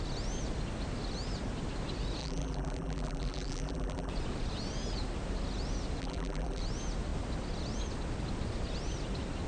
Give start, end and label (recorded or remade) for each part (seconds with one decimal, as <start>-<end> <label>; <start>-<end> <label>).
0.0-2.2 recorded; 2.2-4.1 remade; 4.1-6.0 recorded; 6.0-6.6 remade; 6.6-9.5 recorded